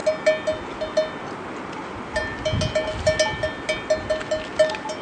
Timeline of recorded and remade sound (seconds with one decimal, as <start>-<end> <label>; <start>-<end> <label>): 0.0-5.0 recorded